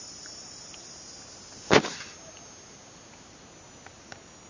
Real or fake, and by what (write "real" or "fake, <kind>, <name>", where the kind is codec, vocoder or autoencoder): real